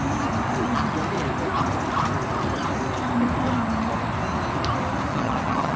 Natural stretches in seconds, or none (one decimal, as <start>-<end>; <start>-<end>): 0.0-5.1

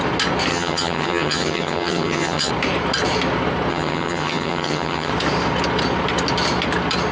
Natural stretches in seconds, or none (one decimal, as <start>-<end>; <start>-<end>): 0.0-0.5; 2.5-3.7; 5.1-7.1

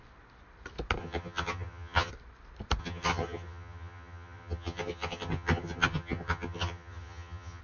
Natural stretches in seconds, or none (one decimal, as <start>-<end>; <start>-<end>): 0.0-1.0; 2.1-2.8

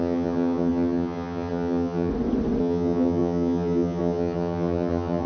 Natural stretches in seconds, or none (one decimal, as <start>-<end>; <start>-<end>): 2.1-2.6